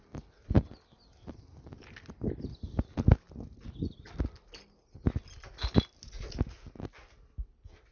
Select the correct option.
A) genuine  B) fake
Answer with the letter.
A